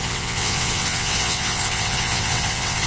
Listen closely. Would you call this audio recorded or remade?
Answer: remade